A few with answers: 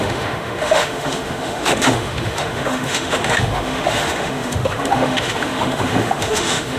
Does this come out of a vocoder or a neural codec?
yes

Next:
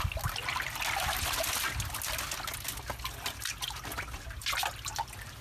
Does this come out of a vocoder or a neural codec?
no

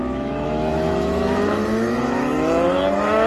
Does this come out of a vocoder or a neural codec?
yes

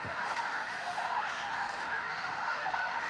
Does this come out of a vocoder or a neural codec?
yes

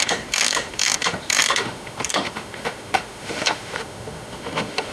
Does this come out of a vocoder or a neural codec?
yes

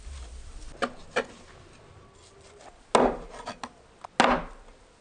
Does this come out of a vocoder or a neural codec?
no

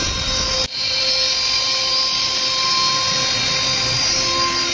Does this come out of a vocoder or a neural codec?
no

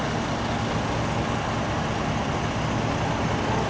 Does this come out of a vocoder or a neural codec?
no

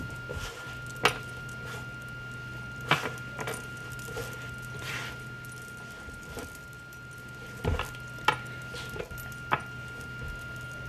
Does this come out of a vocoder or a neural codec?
no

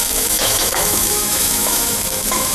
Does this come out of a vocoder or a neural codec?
yes